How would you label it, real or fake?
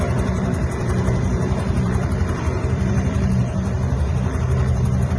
fake